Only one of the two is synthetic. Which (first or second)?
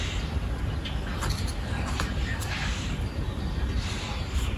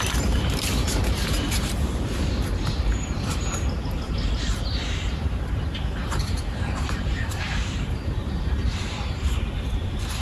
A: second